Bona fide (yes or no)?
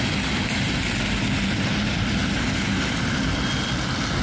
yes